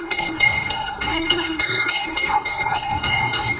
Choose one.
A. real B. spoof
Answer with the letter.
B